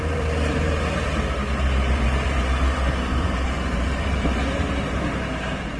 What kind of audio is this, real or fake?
fake